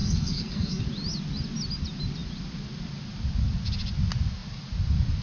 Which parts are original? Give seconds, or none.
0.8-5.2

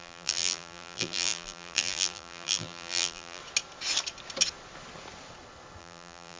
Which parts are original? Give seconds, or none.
3.4-5.8

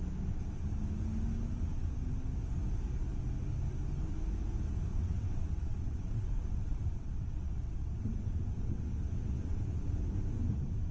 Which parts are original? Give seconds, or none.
0.0-4.9; 10.0-10.9

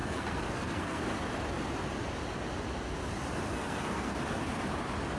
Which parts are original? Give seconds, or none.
1.0-3.5; 4.2-5.2